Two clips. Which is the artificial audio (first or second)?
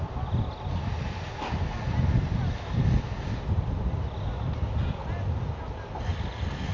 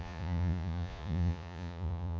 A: second